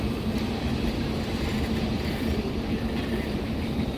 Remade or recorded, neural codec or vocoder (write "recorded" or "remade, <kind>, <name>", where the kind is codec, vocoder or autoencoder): remade, vocoder, BigVGAN v2